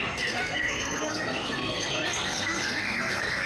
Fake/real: fake